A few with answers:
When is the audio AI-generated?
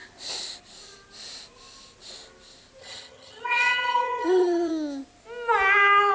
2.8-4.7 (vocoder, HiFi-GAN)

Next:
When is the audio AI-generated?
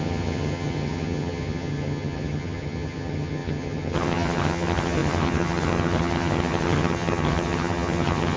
0.0-8.4 (vocoder, HiFi-GAN)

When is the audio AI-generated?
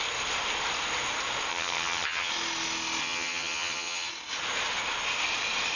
1.5-2.3 (vocoder, HiFi-GAN); 3.0-4.1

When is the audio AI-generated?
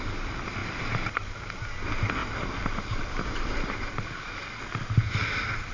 none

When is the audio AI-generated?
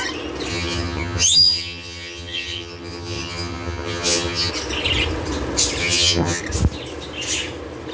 0.5-4.5 (vocoder, HiFi-GAN); 5.8-6.4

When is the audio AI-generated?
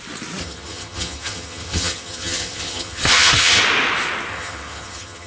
0.4-3.6 (vocoder, HiFi-GAN); 4.3-5.3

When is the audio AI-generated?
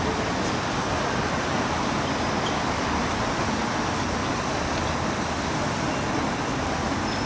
none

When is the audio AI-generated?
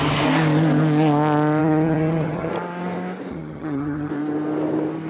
1.6-2.5 (vocoder, HiFi-GAN); 3.3-4.1